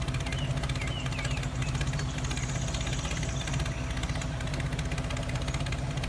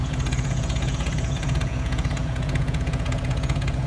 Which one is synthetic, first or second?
second